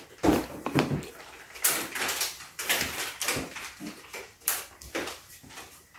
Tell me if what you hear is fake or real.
fake